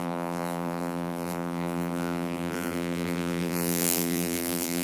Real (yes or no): no